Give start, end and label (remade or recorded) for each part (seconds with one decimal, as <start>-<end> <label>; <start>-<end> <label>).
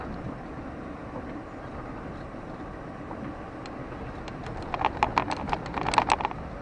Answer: 0.0-6.6 recorded